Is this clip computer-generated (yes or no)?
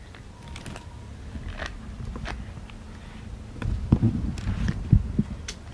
no